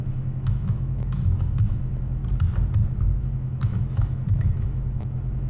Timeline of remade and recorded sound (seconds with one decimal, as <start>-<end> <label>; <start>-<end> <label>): 0.0-2.2 remade; 2.2-3.2 recorded; 3.2-5.5 remade